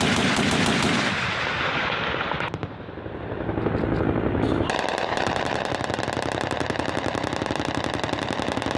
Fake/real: real